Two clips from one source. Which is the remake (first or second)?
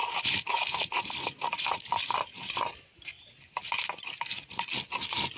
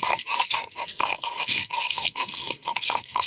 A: second